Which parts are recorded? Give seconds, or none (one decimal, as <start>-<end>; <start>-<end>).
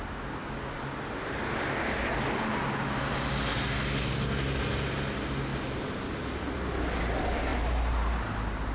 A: 0.0-7.5; 8.2-8.7